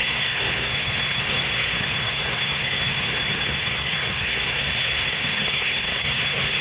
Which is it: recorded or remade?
remade